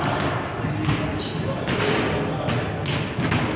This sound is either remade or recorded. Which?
recorded